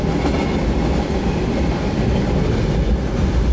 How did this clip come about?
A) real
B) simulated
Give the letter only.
A